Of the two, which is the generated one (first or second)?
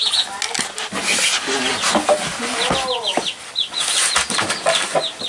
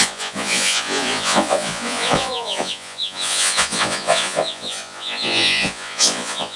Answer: second